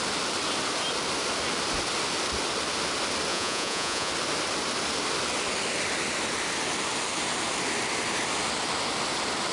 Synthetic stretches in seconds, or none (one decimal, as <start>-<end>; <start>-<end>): 3.3-4.1